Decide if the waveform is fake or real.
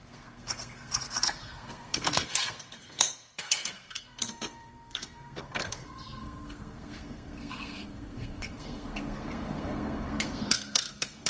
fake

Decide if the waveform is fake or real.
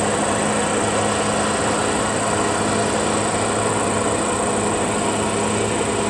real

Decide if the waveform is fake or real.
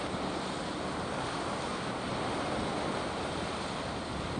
real